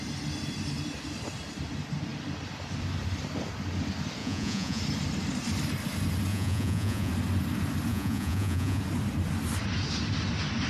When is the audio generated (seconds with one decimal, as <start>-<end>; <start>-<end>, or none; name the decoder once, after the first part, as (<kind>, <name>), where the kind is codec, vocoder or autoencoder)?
4.2-4.8 (vocoder, Vocos); 6.3-7.1; 7.9-8.8